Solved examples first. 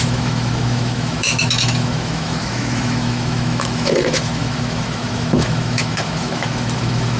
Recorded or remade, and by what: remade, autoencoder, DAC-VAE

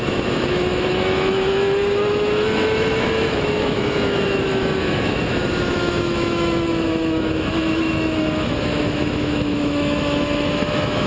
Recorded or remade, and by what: remade, autoencoder, DAC-VAE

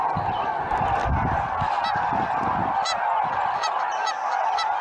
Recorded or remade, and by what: recorded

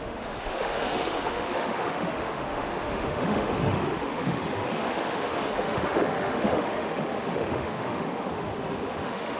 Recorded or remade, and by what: remade, autoencoder, DAC-VAE